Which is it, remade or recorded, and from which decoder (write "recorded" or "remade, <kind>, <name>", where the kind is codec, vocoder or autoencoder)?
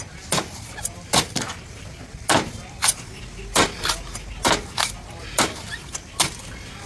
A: recorded